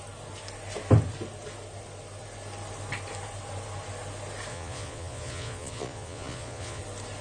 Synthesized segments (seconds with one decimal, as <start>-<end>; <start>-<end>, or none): 4.5-6.8